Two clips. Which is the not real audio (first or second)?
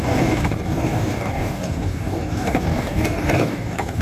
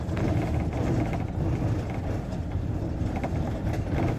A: first